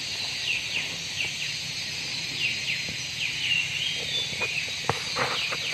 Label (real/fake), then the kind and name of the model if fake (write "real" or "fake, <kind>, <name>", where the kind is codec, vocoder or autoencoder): real